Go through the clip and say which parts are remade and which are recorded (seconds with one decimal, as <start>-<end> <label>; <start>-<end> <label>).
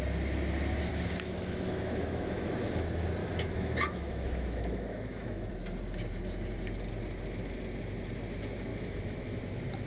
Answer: 0.0-0.9 recorded; 0.9-2.5 remade; 2.5-3.2 recorded; 3.2-5.5 remade; 5.5-8.7 recorded; 8.7-9.4 remade; 9.4-9.9 recorded